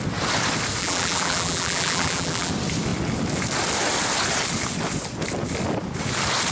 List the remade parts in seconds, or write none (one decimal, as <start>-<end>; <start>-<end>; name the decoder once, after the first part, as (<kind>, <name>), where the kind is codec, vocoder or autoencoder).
0.8-2.5 (vocoder, BigVGAN v2)